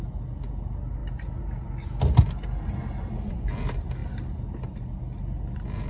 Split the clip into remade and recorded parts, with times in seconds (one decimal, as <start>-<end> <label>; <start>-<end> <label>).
0.0-5.9 recorded